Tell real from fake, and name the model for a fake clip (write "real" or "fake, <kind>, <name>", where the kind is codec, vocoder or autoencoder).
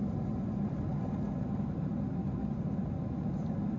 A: real